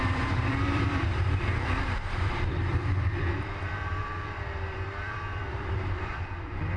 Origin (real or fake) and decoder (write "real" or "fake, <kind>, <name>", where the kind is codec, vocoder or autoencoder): fake, vocoder, BigVGAN v2